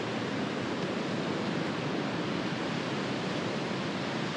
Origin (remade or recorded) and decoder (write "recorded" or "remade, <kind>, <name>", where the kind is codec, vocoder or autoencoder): recorded